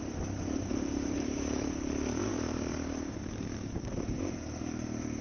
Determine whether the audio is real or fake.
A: fake